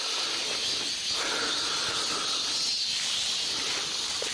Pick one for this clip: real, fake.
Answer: real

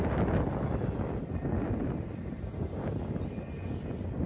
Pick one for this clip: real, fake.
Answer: real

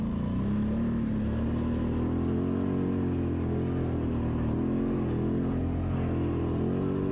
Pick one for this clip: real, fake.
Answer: real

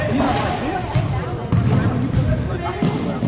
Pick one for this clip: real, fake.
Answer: real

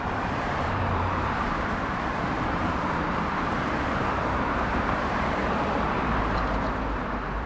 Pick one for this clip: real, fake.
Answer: fake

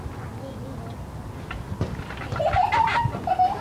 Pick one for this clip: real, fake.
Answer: real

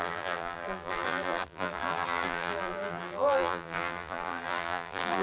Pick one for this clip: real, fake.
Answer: fake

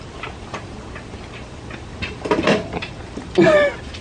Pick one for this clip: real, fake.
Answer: fake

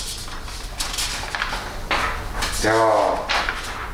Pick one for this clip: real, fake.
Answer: real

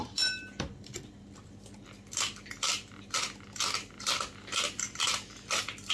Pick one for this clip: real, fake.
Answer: real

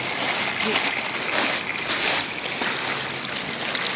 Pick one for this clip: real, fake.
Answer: real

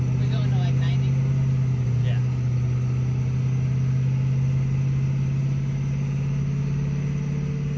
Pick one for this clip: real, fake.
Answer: real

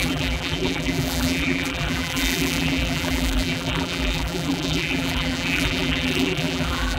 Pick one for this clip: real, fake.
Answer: fake